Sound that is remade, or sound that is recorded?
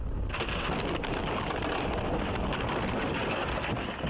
recorded